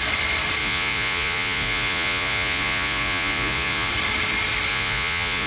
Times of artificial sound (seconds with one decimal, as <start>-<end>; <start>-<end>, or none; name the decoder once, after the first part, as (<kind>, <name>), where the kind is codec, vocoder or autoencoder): 0.6-3.9 (vocoder, Vocos); 4.7-5.5

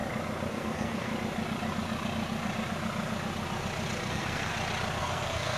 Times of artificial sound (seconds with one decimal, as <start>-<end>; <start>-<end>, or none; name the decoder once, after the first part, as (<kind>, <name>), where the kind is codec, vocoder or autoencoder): 0.5-1.1 (codec, SNAC); 4.1-4.5; 5.0-5.6

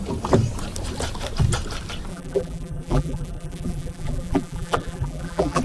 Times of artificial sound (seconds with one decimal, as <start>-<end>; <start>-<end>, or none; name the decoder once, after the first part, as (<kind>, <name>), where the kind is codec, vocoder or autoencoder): 2.1-5.6 (vocoder, BigVGAN v2)

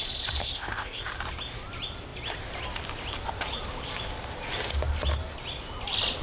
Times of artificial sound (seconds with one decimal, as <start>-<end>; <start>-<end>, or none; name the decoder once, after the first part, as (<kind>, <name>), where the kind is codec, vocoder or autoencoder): 0.4-1.0 (codec, ZipCodec)